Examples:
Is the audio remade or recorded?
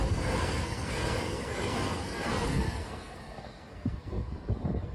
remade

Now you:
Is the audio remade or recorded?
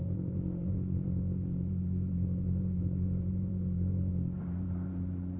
remade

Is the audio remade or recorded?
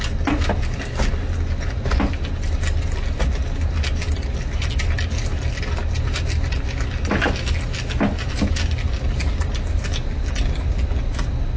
recorded